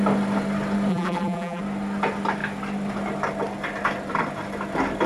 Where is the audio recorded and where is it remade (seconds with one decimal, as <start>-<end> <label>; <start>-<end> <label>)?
0.0-0.9 recorded; 0.9-1.6 remade; 1.6-5.1 recorded